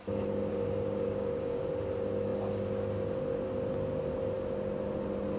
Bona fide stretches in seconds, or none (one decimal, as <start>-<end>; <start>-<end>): 0.0-0.5; 1.7-5.4